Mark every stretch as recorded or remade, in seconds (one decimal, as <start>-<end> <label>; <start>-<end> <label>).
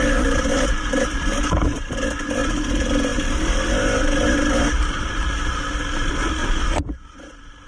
0.0-0.5 recorded; 0.5-1.8 remade; 1.8-6.4 recorded; 6.4-7.7 remade